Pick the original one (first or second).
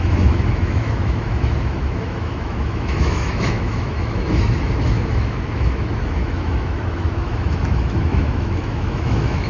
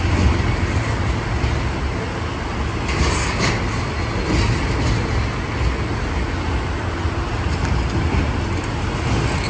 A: second